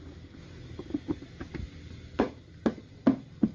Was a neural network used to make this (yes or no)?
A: no